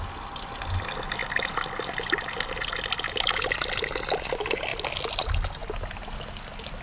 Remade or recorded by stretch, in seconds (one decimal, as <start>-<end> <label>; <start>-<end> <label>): 0.0-6.8 recorded